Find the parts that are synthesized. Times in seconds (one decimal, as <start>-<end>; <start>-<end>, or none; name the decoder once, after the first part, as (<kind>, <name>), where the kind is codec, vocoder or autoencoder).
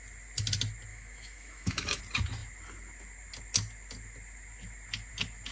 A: 0.9-2.0 (autoencoder, DAC-VAE)